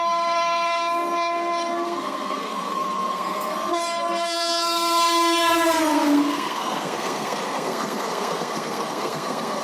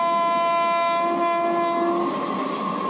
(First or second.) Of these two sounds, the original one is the second